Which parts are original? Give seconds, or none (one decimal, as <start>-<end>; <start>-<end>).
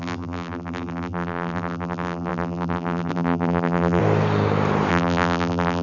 4.0-4.9